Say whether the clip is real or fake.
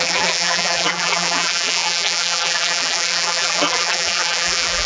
fake